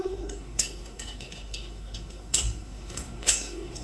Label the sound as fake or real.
fake